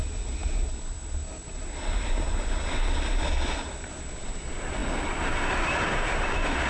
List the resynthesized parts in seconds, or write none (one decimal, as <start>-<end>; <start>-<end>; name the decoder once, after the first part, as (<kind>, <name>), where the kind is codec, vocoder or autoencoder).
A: none